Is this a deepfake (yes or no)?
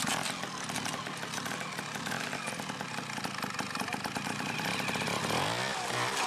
no